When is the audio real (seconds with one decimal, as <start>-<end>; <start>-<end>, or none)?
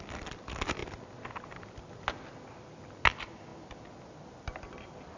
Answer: 0.0-5.2